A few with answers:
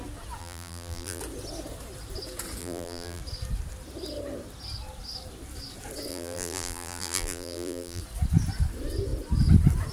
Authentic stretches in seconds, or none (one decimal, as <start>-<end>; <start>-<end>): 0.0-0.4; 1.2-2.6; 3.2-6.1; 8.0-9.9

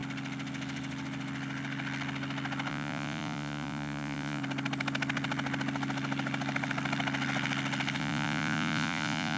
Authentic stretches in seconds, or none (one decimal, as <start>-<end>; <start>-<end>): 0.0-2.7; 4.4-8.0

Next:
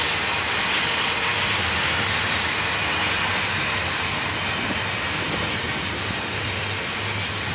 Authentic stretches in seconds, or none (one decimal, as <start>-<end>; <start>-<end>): 0.0-7.5

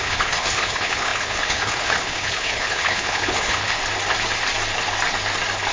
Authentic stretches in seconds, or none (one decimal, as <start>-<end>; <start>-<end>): 3.8-5.7

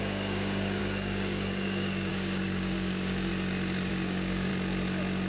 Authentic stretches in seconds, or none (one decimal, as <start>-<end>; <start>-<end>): 3.3-3.9; 4.5-5.3

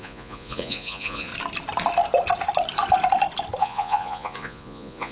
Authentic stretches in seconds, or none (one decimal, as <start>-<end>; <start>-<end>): 1.3-3.6

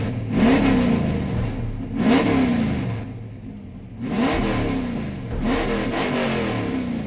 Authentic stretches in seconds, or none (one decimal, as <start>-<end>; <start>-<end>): 0.0-7.1

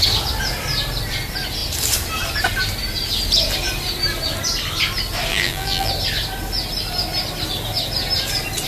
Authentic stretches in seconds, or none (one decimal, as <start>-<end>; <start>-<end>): 0.0-5.3; 5.9-8.7